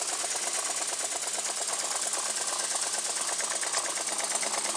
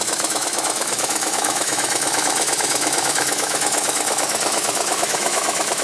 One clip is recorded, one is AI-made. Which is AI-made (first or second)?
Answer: second